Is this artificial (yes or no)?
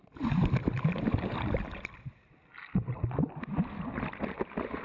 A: yes